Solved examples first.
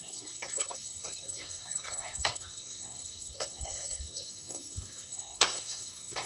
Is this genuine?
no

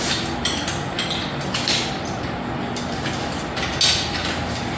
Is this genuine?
yes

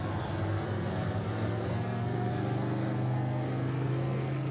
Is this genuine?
no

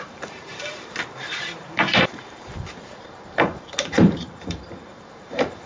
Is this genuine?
no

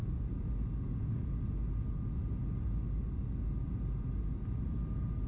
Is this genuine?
yes